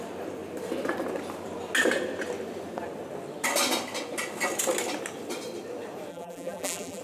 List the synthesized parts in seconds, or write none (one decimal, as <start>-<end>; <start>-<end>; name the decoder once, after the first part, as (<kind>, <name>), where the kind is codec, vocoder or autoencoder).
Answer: 6.1-7.0 (vocoder, BigVGAN v2)